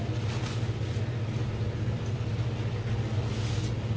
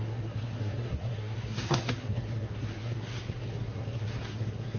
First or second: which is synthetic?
second